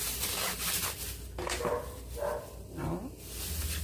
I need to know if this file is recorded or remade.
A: recorded